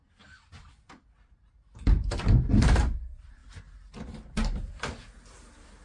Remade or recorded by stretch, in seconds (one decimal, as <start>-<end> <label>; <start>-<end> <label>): 0.0-5.8 recorded